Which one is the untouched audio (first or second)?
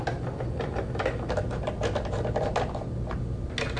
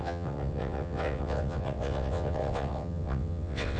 first